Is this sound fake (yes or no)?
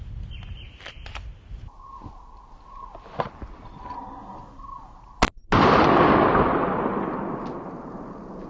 no